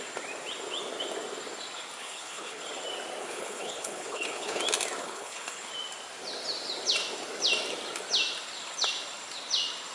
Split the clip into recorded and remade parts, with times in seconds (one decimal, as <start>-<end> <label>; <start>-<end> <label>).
0.0-2.0 recorded; 2.0-2.6 remade; 2.6-3.2 recorded; 3.2-4.6 remade; 4.6-5.0 recorded; 5.0-5.7 remade; 5.7-9.9 recorded